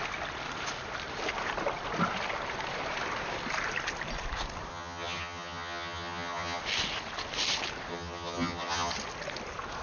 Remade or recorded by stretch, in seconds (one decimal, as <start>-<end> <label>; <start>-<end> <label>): 0.0-4.7 recorded; 4.7-6.6 remade; 6.6-7.9 recorded; 7.9-8.9 remade; 8.9-9.8 recorded